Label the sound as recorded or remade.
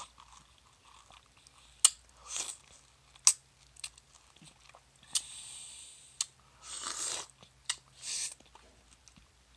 recorded